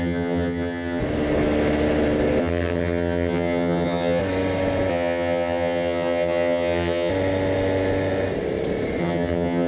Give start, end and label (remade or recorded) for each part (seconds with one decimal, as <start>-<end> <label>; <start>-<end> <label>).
0.0-1.0 remade; 1.0-2.4 recorded; 2.4-4.2 remade; 4.2-4.9 recorded; 4.9-7.1 remade; 7.1-9.0 recorded; 9.0-9.7 remade